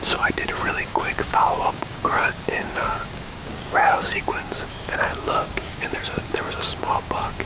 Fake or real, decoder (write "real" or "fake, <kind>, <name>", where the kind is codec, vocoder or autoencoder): fake, codec, DAC